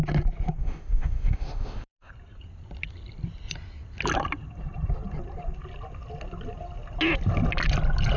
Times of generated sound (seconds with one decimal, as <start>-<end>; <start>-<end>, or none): 0.6-2.1